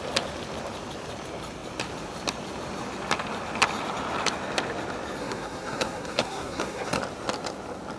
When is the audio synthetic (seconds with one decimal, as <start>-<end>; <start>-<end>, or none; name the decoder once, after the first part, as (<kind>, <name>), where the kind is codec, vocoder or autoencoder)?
5.2-7.0 (codec, SNAC)